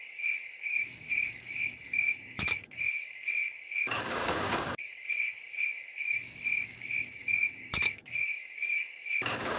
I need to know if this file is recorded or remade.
remade